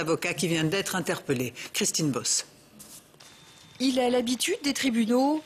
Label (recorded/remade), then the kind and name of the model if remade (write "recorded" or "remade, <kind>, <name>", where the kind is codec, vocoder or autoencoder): recorded